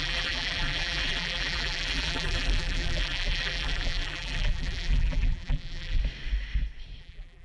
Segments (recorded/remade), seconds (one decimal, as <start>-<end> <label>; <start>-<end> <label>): 0.0-6.0 remade; 6.0-7.0 recorded; 7.0-7.4 remade